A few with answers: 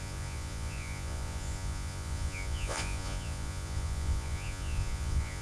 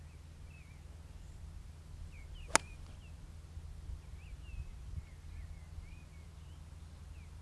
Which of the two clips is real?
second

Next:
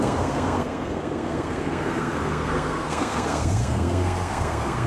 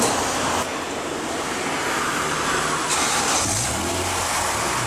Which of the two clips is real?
second